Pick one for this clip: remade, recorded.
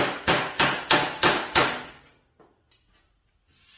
recorded